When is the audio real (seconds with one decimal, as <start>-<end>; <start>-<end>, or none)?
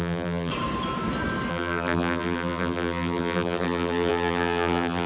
0.5-1.5